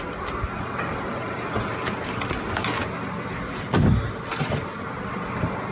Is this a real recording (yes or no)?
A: no